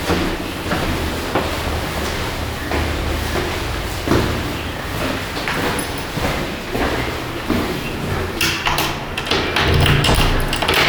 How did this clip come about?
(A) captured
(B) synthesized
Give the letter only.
A